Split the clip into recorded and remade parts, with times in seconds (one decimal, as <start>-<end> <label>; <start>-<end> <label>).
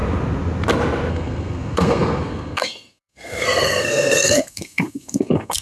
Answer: 0.0-1.1 recorded; 1.1-5.6 remade